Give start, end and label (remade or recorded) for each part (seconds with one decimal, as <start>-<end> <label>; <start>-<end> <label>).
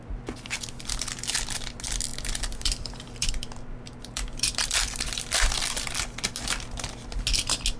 0.0-2.1 recorded; 2.1-6.0 remade; 6.0-7.8 recorded